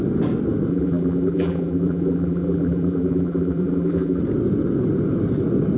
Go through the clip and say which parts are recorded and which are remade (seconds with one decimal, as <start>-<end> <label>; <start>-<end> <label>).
0.0-0.7 recorded; 0.7-4.2 remade; 4.2-5.8 recorded